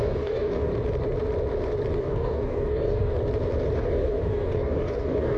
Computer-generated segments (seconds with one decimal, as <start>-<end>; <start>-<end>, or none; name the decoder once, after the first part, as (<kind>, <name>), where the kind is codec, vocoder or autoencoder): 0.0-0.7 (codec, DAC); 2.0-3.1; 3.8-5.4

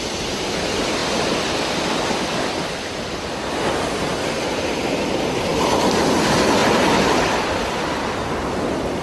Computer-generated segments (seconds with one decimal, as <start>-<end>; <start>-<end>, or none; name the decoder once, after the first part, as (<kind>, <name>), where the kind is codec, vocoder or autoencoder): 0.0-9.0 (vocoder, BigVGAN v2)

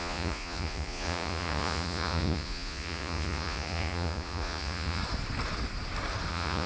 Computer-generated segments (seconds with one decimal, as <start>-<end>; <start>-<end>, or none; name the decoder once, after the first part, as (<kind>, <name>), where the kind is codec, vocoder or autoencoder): 0.0-5.0 (vocoder, Vocos); 6.3-6.7

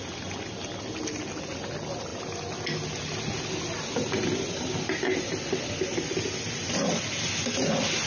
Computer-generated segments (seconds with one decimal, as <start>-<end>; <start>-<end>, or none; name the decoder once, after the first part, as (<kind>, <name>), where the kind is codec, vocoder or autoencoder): none